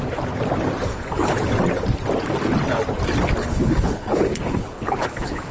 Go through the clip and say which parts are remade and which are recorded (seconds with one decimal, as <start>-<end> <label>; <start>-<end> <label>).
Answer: 0.0-0.9 recorded; 0.9-1.5 remade; 1.5-3.4 recorded; 3.4-5.5 remade